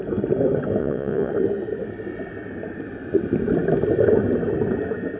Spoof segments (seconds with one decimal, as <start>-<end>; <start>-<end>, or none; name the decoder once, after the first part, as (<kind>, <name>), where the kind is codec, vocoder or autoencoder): 0.8-1.3 (vocoder, Vocos)